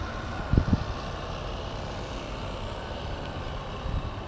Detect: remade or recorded recorded